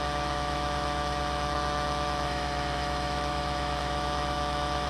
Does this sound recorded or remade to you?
remade